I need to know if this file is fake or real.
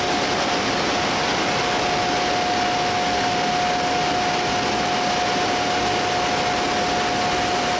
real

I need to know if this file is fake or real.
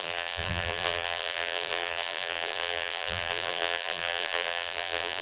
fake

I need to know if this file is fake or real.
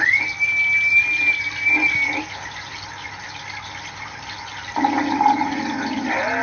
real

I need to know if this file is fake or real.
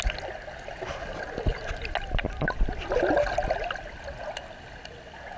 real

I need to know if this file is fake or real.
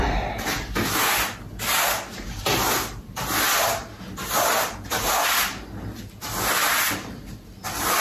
real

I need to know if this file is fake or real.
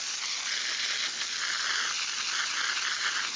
real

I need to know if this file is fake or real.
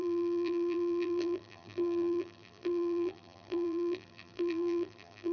fake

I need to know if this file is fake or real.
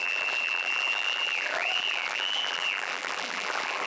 fake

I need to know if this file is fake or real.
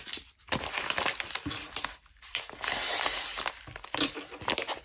fake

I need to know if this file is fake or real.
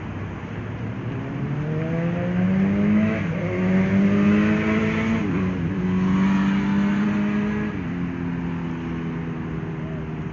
real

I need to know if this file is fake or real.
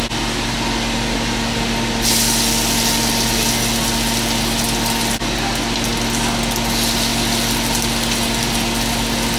real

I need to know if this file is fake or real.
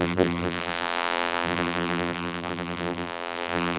fake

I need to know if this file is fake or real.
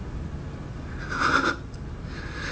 real